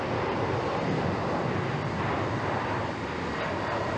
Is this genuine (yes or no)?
yes